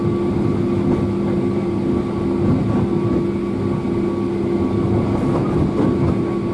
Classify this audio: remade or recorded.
recorded